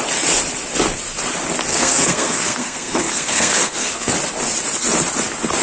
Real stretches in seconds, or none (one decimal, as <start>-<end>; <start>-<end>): 0.0-1.7; 4.1-5.6